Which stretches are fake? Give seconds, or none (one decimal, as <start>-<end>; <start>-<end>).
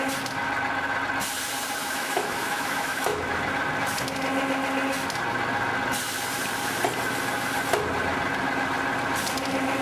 1.8-3.4